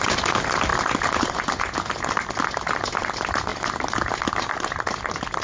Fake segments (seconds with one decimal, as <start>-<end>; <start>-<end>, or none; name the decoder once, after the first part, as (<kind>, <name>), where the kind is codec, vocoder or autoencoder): none